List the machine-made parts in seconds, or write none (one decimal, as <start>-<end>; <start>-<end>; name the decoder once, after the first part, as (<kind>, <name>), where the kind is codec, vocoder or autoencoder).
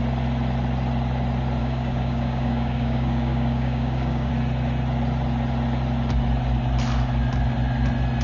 1.6-4.3 (codec, DAC)